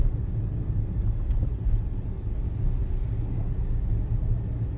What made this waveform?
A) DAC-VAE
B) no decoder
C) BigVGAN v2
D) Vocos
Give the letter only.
B